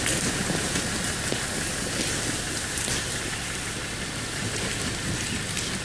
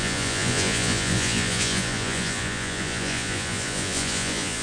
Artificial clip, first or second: second